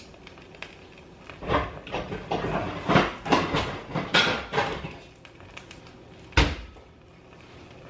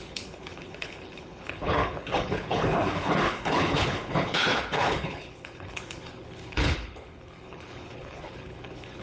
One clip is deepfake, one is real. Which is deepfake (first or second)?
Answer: second